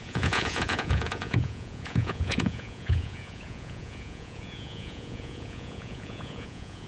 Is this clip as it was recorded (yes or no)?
no